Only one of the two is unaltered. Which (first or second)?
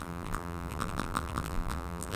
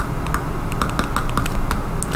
second